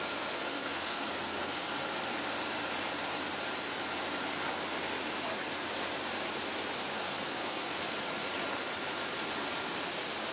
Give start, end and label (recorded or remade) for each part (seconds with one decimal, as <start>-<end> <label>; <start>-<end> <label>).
0.0-1.7 remade; 1.7-6.9 recorded; 6.9-7.8 remade; 7.8-10.3 recorded